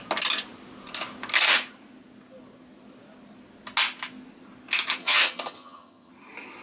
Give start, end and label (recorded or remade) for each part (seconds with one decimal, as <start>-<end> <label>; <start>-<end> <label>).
0.0-5.0 recorded; 5.0-6.1 remade; 6.1-6.6 recorded